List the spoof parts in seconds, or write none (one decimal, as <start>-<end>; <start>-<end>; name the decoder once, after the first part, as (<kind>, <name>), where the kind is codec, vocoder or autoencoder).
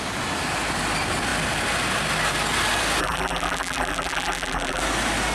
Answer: 3.0-4.8 (vocoder, BigVGAN v2)